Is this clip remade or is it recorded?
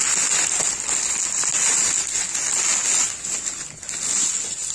recorded